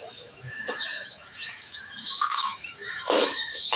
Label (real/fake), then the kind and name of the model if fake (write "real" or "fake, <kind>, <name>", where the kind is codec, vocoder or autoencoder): fake, autoencoder, DAC-VAE